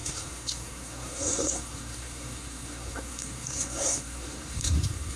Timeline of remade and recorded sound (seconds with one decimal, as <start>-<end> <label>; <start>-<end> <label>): 0.0-5.2 remade